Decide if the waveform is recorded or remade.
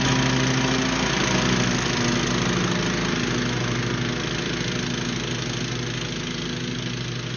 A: recorded